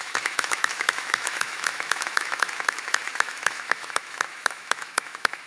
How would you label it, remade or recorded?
remade